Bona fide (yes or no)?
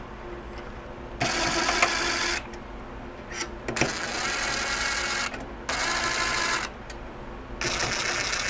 yes